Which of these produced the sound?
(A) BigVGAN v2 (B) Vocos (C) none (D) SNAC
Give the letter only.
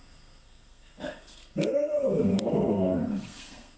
D